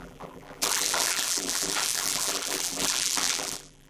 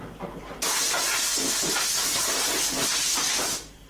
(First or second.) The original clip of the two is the second